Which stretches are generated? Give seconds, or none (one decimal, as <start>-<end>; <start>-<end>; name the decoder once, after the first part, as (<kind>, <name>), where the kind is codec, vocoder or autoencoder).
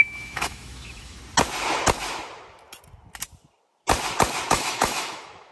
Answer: 0.0-1.2 (autoencoder, DAC-VAE); 4.5-5.5